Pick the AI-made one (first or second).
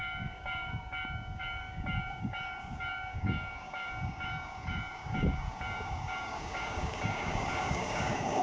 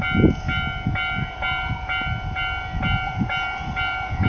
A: first